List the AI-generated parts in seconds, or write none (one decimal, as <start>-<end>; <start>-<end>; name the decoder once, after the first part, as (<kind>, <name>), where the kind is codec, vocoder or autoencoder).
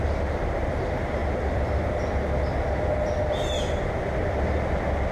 0.0-1.2 (vocoder, BigVGAN v2); 3.8-4.2